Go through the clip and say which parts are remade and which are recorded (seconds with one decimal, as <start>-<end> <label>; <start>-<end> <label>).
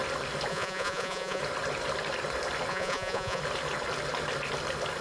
0.0-0.5 recorded; 0.5-1.4 remade; 1.4-2.7 recorded; 2.7-3.4 remade; 3.4-5.0 recorded